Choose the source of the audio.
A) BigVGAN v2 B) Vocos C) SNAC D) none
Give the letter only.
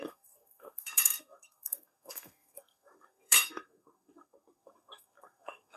C